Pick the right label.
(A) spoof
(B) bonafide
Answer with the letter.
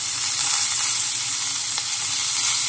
B